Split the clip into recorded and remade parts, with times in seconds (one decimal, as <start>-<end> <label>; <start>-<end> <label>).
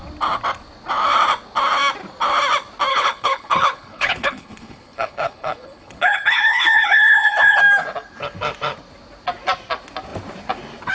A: 0.0-2.9 recorded; 2.9-7.6 remade; 7.6-10.9 recorded